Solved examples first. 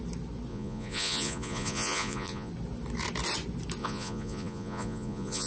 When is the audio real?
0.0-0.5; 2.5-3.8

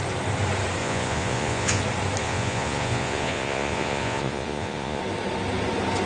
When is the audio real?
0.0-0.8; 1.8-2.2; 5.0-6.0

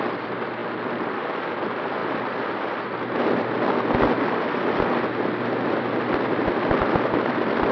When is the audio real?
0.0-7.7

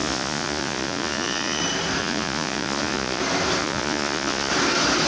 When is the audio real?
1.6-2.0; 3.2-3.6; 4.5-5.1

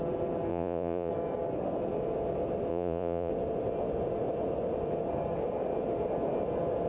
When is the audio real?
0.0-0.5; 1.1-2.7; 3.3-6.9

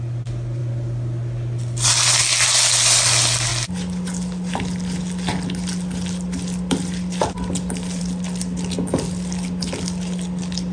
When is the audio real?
0.0-10.7

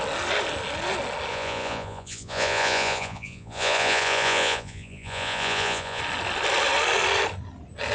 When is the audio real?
0.0-1.3; 6.0-7.9

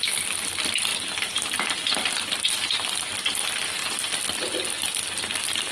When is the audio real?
0.0-5.7